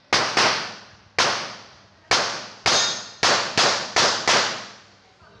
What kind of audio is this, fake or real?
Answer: real